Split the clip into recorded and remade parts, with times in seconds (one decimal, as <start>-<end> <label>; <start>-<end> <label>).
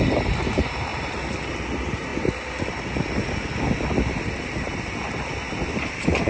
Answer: 0.0-2.1 remade; 2.1-4.4 recorded; 4.4-6.3 remade